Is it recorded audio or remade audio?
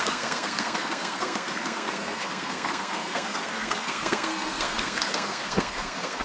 remade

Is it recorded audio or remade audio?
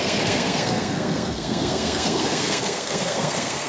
remade